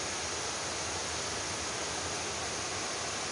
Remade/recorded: recorded